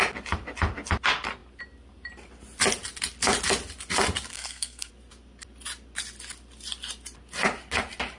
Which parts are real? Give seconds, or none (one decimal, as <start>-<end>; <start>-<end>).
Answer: 0.0-4.3; 4.9-8.2